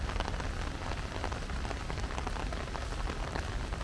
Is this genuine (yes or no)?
yes